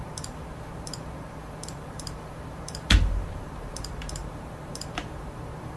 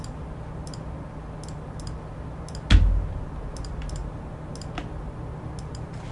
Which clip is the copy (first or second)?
first